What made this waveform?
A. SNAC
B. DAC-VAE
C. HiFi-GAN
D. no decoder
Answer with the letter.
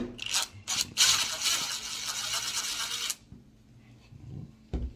D